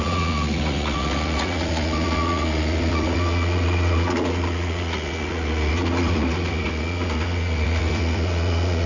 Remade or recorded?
remade